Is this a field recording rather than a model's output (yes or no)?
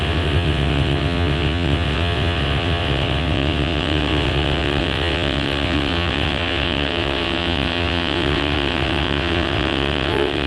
no